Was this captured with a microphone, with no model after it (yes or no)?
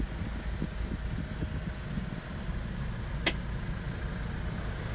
yes